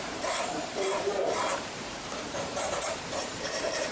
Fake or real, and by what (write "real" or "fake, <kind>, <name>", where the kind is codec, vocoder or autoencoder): fake, vocoder, BigVGAN v2